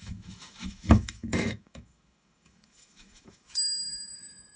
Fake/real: fake